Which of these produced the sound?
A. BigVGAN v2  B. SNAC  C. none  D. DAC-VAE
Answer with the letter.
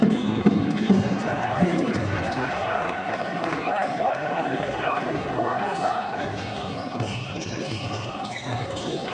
B